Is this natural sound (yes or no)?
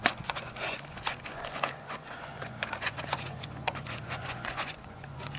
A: no